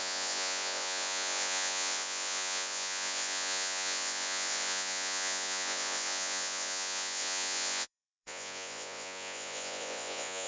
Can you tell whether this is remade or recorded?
remade